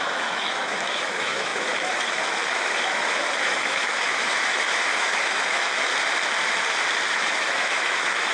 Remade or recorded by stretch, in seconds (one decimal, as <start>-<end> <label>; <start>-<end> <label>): 0.0-5.9 remade; 5.9-7.1 recorded; 7.1-8.3 remade